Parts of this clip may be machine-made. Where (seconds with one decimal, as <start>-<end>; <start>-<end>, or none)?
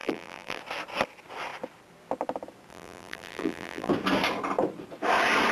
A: 0.0-0.6; 2.7-3.9